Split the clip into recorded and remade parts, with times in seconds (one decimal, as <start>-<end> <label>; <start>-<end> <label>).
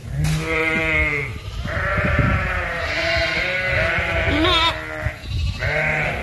0.0-6.2 recorded